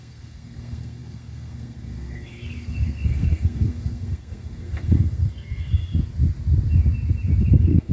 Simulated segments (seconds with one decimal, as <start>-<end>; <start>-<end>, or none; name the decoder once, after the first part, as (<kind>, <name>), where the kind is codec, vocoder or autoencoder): 0.0-5.8 (codec, SNAC); 7.5-7.9